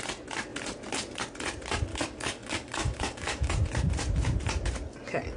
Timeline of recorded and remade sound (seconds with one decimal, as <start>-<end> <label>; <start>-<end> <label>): 0.0-1.9 recorded; 1.9-3.5 remade; 3.5-5.4 recorded